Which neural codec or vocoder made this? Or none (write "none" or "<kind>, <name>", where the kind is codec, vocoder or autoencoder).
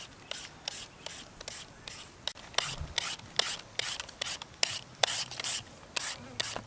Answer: none